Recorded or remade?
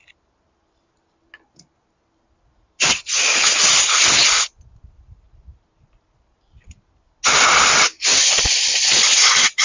recorded